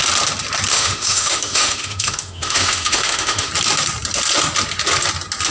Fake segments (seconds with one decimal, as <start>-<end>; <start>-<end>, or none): 0.7-3.5